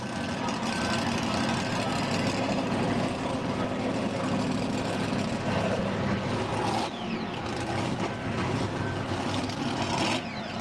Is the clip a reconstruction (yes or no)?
no